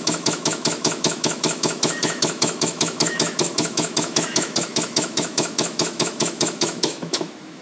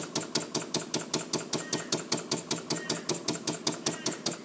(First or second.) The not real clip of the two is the first